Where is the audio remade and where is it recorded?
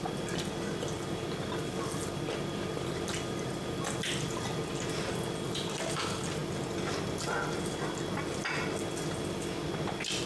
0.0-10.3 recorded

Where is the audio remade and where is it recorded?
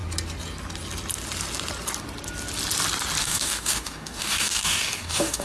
0.0-3.2 recorded; 3.2-5.4 remade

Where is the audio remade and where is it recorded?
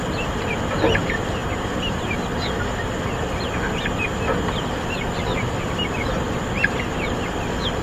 0.0-7.8 recorded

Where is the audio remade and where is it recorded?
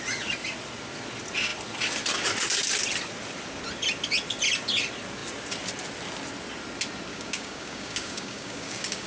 0.0-7.1 recorded; 7.1-9.1 remade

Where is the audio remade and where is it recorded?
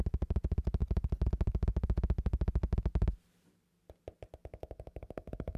0.0-4.4 recorded; 4.4-5.6 remade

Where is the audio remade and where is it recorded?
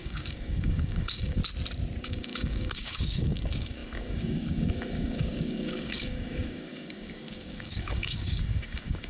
0.0-1.4 remade; 1.4-2.0 recorded; 2.0-9.1 remade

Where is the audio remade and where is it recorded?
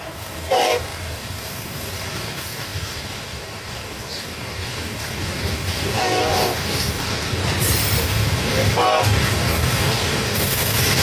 0.0-7.4 remade; 7.4-8.0 recorded; 8.0-11.0 remade